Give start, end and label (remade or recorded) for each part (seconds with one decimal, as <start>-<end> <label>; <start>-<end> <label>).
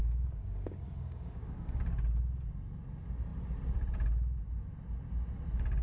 0.0-1.8 remade; 1.8-5.8 recorded